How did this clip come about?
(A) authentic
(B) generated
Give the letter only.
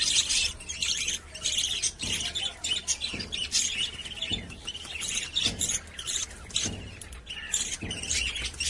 A